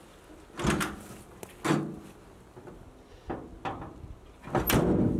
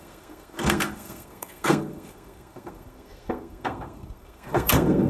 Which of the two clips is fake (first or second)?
second